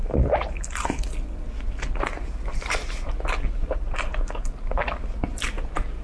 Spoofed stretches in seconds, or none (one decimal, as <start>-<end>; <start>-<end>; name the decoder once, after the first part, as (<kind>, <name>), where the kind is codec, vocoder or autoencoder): none